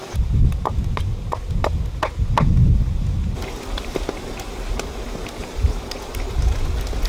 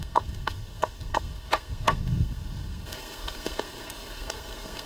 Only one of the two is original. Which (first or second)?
first